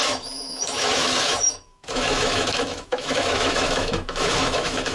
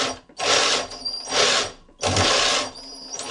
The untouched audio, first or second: second